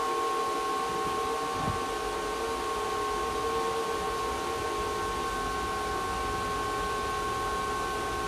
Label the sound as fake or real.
real